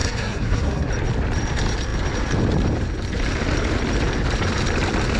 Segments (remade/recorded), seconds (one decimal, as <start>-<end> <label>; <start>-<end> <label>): 0.0-0.9 remade; 0.9-5.2 recorded